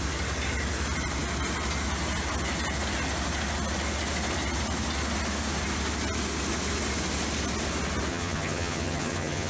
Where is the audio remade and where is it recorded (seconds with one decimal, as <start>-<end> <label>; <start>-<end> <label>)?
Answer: 0.0-8.1 recorded; 8.1-9.5 remade